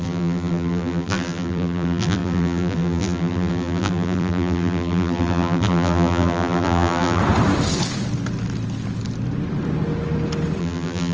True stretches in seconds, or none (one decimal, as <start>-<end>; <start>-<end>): 7.2-10.6